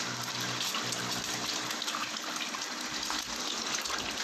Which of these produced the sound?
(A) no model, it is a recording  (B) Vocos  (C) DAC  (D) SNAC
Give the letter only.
A